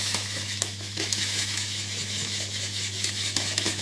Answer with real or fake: fake